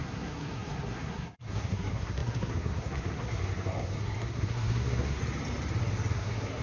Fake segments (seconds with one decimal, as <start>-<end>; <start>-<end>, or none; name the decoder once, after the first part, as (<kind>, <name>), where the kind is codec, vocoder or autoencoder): 0.0-5.2 (codec, SNAC); 6.1-6.6